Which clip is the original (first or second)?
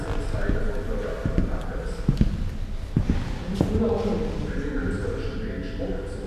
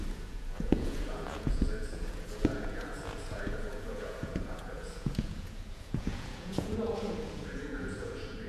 first